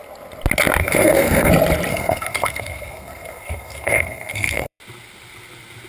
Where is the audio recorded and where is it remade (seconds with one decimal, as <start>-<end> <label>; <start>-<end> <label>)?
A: 0.0-0.8 recorded; 0.8-1.5 remade; 1.5-1.9 recorded; 1.9-4.8 remade; 4.8-5.9 recorded